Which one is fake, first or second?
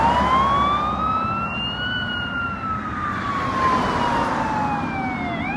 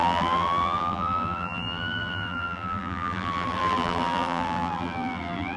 second